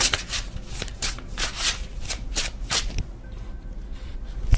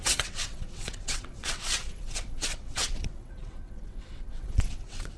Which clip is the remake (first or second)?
second